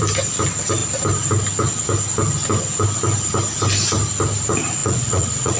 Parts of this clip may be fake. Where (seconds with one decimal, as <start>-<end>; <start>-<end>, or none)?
4.8-5.6